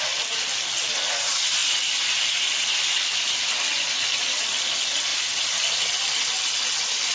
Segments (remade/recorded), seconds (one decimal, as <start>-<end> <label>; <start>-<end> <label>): 0.0-7.1 recorded